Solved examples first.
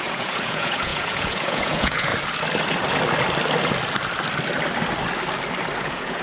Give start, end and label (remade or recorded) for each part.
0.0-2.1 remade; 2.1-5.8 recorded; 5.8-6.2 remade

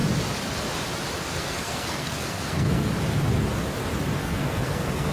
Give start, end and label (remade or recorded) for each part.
0.0-1.2 recorded; 1.2-2.9 remade; 2.9-4.2 recorded; 4.2-5.1 remade

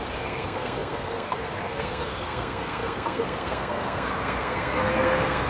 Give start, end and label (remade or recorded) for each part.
0.0-5.5 remade